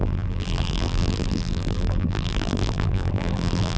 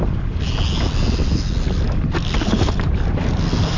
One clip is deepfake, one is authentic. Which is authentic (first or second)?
second